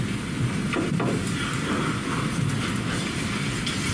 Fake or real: real